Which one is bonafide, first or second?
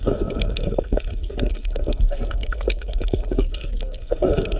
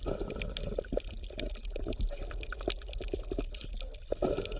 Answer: second